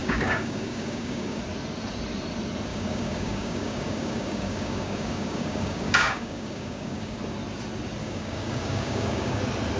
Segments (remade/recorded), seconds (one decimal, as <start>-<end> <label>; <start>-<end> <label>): 0.0-1.4 remade; 1.4-2.7 recorded; 2.7-7.2 remade; 7.2-8.0 recorded; 8.0-9.4 remade; 9.4-9.8 recorded